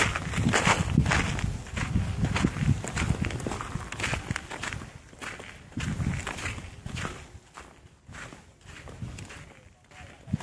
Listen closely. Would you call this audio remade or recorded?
recorded